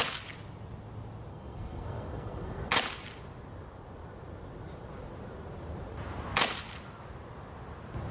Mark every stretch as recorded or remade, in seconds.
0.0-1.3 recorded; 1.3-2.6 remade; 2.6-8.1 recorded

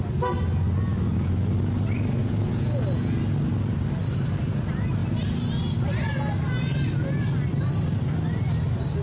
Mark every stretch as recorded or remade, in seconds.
0.0-2.2 recorded; 2.2-3.2 remade; 3.2-9.0 recorded

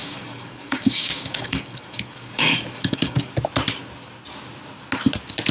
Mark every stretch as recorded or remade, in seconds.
0.0-3.3 remade; 3.3-5.5 recorded

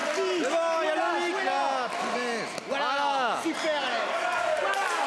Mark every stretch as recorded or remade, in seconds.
0.0-5.1 recorded

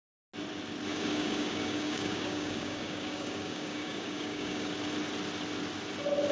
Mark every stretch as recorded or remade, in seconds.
0.0-0.9 recorded; 0.9-4.7 remade; 4.7-6.3 recorded

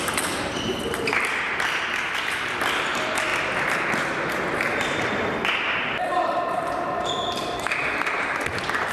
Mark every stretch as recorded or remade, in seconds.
0.0-8.9 recorded

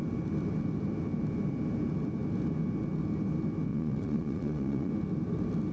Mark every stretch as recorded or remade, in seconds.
0.0-3.7 recorded; 3.7-4.9 remade; 4.9-5.7 recorded

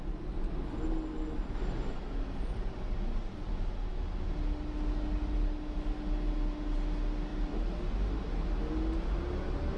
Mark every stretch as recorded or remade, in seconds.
0.0-9.8 recorded